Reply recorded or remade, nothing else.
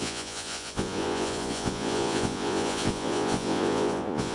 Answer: remade